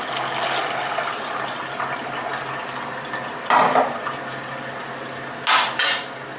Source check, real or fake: real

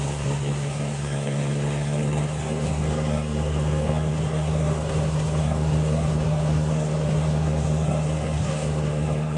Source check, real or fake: fake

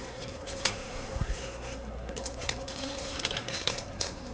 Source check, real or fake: fake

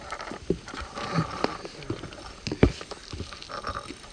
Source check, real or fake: real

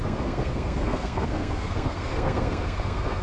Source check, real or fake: fake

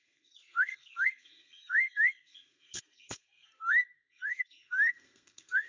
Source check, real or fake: fake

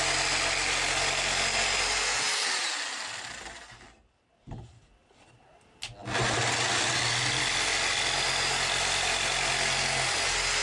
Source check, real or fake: real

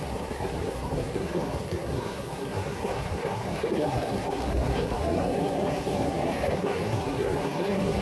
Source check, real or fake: fake